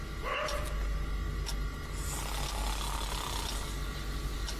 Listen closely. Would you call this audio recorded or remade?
recorded